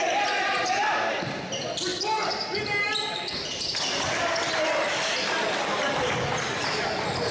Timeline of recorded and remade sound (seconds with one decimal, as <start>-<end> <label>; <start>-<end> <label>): 0.0-7.3 recorded